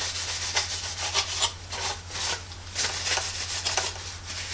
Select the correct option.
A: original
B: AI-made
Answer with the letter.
A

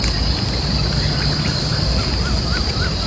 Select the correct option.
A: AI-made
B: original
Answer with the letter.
B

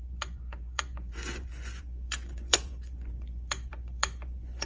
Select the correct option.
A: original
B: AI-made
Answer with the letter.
B